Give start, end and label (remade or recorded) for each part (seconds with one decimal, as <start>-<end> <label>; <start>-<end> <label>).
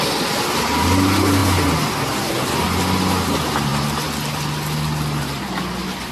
0.0-6.1 recorded